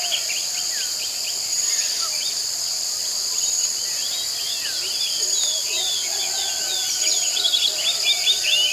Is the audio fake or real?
real